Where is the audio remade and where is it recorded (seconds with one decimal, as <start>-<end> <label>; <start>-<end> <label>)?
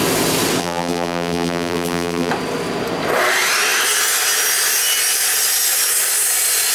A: 0.0-0.6 recorded; 0.6-2.3 remade; 2.3-6.7 recorded